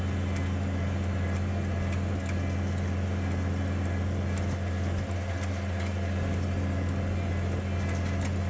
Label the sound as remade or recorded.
recorded